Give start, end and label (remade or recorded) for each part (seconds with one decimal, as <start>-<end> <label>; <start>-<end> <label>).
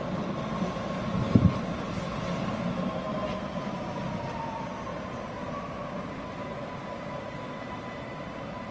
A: 0.0-8.7 recorded